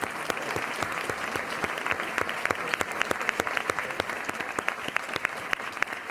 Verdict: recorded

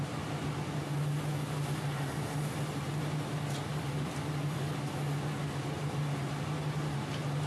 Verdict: recorded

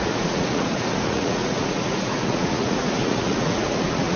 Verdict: remade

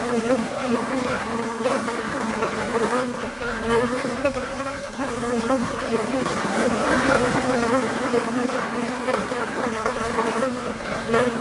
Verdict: remade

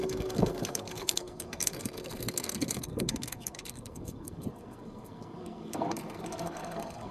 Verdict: remade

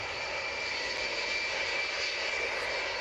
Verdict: recorded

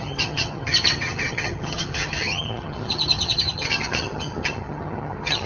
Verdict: remade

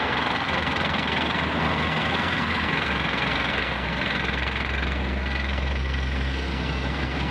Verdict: remade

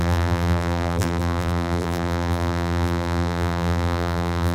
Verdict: remade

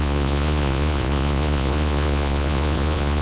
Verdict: remade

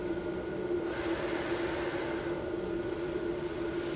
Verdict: recorded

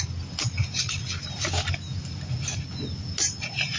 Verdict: recorded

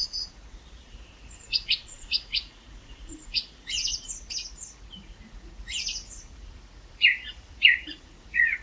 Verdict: remade